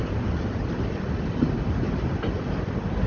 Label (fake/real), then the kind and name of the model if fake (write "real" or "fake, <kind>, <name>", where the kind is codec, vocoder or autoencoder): real